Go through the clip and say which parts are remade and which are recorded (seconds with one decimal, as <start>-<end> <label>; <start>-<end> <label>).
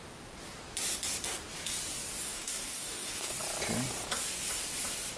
0.0-2.2 recorded; 2.2-3.3 remade; 3.3-5.2 recorded